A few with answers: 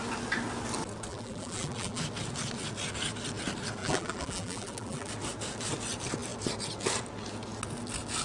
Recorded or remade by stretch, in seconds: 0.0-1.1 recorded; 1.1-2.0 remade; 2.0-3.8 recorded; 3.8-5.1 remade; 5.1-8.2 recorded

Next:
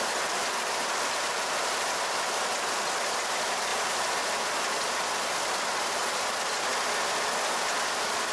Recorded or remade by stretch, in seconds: 0.0-3.7 remade; 3.7-4.2 recorded; 4.2-6.7 remade; 6.7-7.9 recorded; 7.9-8.3 remade